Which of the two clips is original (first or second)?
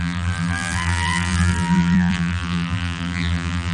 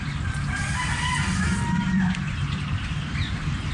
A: second